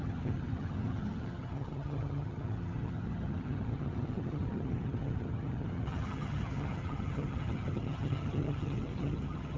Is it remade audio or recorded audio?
remade